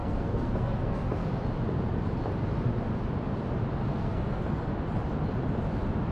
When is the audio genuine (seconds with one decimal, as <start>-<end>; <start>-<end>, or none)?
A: 1.3-3.9; 4.7-6.1